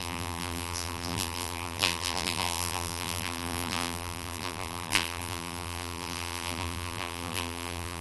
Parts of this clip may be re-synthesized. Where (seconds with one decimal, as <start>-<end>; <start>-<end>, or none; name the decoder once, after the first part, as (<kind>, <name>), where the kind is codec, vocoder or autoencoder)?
0.0-8.0 (vocoder, BigVGAN v2)